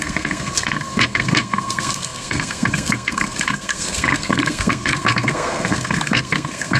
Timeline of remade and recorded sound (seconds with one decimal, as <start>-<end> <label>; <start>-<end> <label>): 0.0-6.8 remade